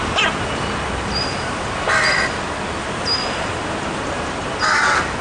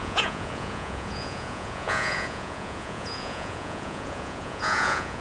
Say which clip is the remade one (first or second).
second